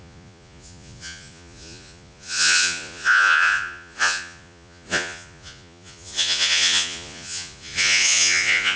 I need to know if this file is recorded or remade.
remade